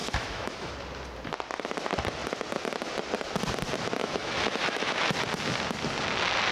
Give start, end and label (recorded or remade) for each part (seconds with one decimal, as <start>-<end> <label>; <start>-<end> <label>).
0.0-0.7 remade; 0.7-4.0 recorded; 4.0-5.1 remade; 5.1-6.5 recorded

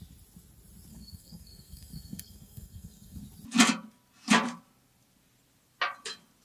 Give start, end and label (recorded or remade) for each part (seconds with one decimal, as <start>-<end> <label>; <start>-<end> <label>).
0.0-0.9 recorded; 0.9-3.2 remade; 3.2-6.4 recorded

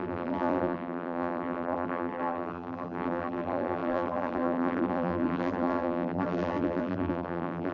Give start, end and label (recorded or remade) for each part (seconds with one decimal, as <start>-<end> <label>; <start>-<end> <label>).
0.0-7.7 remade

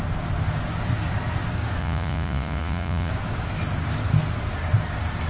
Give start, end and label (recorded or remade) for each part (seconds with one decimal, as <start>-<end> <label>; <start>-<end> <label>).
0.0-1.8 recorded; 1.8-3.1 remade; 3.1-5.3 recorded

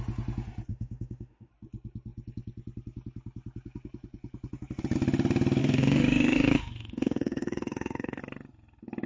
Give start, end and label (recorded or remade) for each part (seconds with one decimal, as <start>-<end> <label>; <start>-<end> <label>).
0.0-0.7 recorded; 0.7-1.5 remade; 1.5-5.6 recorded; 5.6-8.2 remade; 8.2-9.1 recorded